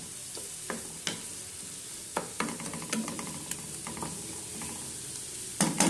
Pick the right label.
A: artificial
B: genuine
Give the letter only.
B